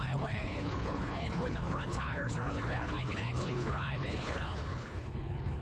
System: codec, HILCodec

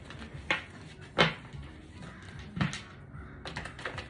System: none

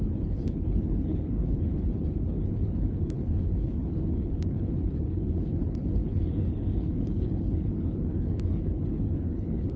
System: codec, HILCodec